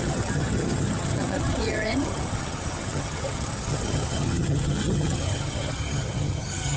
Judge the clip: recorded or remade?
remade